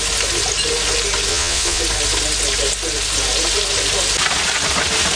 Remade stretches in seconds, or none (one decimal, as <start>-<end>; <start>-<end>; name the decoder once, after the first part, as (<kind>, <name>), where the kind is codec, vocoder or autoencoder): 1.3-1.8 (vocoder, Vocos)